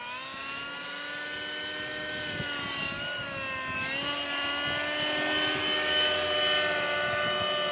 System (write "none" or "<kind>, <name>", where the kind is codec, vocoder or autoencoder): none